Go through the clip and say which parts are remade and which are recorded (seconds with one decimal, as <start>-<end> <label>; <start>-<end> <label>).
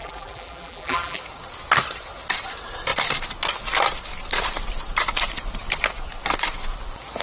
0.0-1.2 remade; 1.2-7.2 recorded